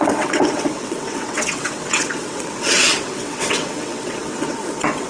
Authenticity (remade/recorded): remade